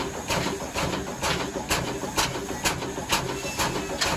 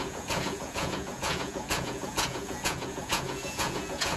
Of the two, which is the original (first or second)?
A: first